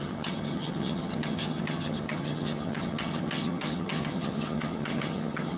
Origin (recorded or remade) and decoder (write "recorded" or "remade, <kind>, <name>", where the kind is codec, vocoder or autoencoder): remade, vocoder, HiFi-GAN